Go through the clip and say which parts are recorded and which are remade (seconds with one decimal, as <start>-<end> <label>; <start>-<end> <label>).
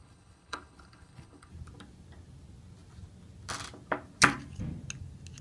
0.0-1.5 remade; 1.5-5.4 recorded